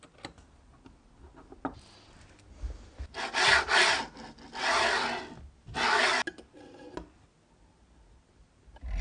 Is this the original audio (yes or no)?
yes